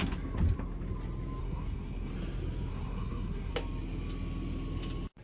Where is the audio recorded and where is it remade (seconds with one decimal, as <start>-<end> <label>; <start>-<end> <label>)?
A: 0.0-1.4 recorded; 1.4-2.1 remade; 2.1-2.7 recorded; 2.7-3.5 remade; 3.5-5.2 recorded